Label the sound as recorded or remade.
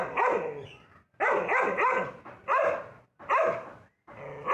recorded